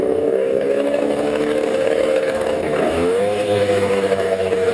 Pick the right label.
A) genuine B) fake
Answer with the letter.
B